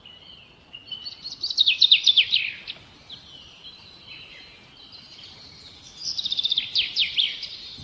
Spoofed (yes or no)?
no